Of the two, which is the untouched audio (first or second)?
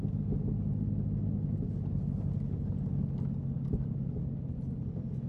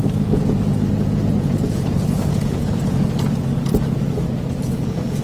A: first